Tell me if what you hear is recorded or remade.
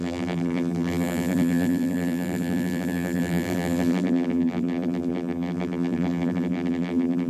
remade